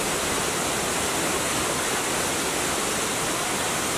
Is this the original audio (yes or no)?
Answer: yes